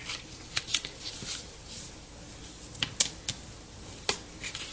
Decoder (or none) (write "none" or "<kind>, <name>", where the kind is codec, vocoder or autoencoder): none